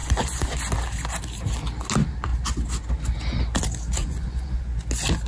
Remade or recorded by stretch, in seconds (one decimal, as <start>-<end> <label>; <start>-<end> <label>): 0.0-0.6 remade; 0.6-4.0 recorded; 4.0-4.7 remade; 4.7-5.3 recorded